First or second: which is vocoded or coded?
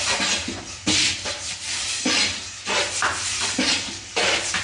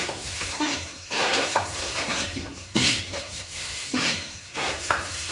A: second